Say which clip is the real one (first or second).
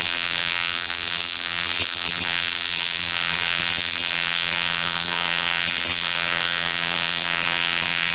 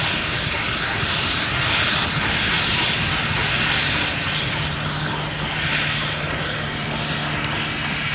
second